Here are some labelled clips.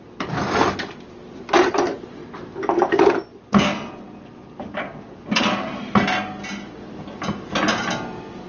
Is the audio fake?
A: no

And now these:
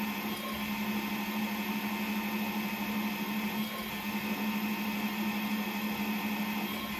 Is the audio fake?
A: no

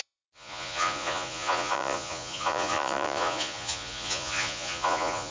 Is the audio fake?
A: yes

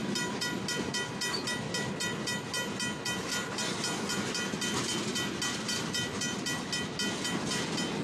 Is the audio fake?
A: no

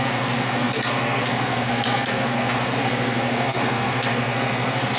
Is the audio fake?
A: yes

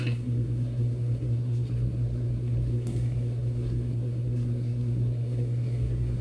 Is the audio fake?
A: yes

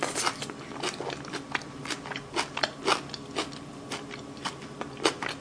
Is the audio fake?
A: no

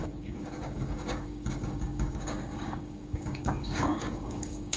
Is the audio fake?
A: yes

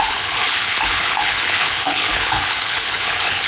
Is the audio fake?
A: yes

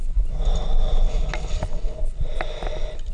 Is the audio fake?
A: no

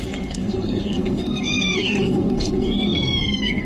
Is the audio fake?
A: yes